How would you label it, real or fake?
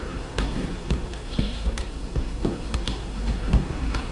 fake